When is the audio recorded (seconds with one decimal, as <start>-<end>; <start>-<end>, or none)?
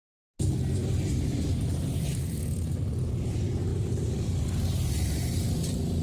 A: 0.0-3.7; 4.4-6.0